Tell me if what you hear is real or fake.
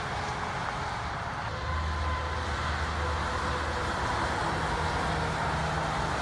real